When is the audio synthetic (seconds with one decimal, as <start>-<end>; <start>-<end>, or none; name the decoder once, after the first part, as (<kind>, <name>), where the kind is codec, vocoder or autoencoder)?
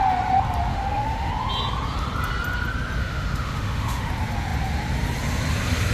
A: 0.7-1.3 (autoencoder, DAC-VAE); 3.0-4.1